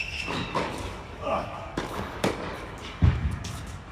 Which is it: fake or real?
fake